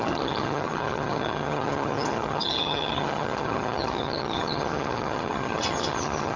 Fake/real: fake